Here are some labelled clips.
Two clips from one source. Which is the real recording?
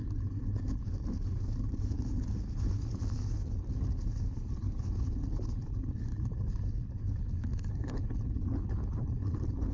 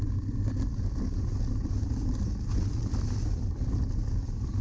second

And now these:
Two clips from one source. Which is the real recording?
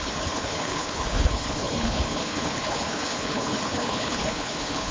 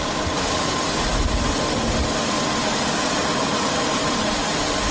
second